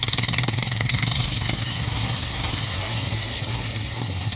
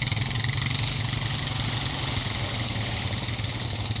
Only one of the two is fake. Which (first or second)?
first